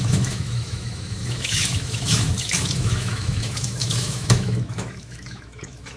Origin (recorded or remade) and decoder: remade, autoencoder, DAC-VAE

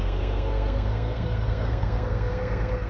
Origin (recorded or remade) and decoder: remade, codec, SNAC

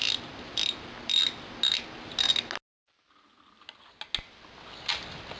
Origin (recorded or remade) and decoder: recorded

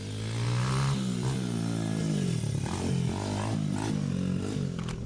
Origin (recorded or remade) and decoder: recorded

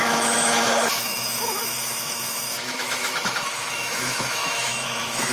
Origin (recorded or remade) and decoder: remade, autoencoder, DAC-VAE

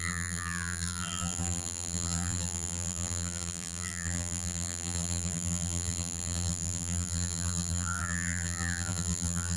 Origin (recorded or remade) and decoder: remade, vocoder, BigVGAN v2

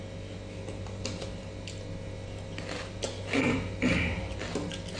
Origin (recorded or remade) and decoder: recorded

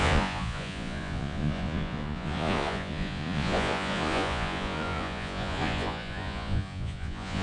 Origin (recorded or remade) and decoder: remade, vocoder, Vocos